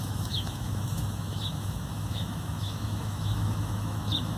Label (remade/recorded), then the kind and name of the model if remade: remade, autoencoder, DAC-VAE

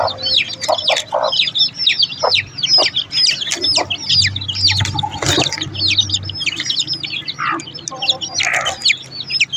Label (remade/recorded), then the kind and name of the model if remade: recorded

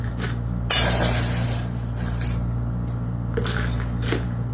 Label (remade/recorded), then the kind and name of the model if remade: recorded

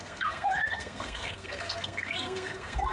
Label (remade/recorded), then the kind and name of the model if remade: remade, codec, SNAC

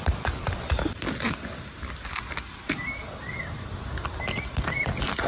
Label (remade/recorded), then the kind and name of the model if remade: recorded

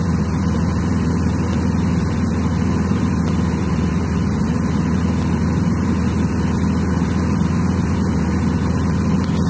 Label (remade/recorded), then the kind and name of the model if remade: remade, vocoder, BigVGAN v2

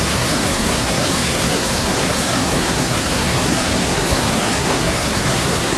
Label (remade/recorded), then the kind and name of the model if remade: remade, codec, SNAC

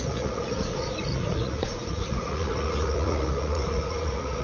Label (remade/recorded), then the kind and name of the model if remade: remade, vocoder, Vocos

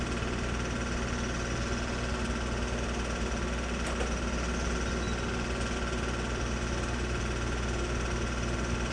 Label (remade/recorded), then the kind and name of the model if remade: recorded